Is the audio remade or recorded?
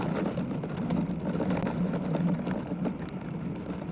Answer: recorded